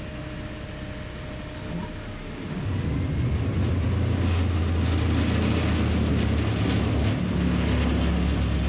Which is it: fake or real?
real